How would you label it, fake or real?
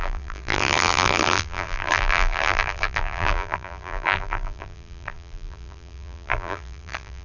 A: fake